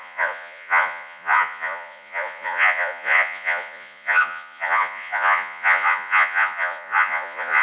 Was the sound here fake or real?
fake